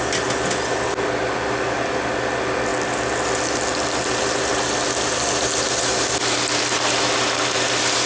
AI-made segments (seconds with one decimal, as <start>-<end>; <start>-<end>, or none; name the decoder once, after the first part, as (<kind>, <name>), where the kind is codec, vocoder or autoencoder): none